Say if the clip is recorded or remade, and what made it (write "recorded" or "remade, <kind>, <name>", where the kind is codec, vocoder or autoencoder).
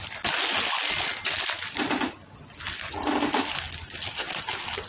recorded